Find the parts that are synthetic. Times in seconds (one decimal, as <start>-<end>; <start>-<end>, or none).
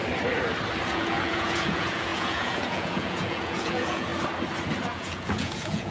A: 0.9-4.1; 4.8-5.9